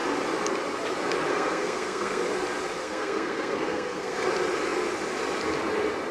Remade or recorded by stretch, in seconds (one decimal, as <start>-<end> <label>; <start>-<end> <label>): 0.0-1.3 recorded; 1.3-2.2 remade; 2.2-2.8 recorded; 2.8-4.3 remade; 4.3-6.1 recorded